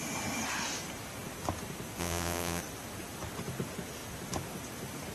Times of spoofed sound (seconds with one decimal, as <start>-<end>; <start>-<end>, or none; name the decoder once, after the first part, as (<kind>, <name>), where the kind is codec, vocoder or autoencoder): 2.0-2.6 (vocoder, BigVGAN v2)